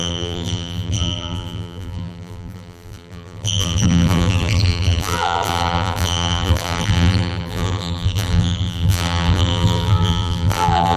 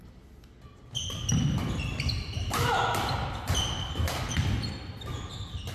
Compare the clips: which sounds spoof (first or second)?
first